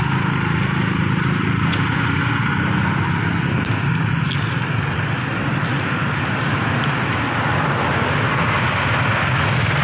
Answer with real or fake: real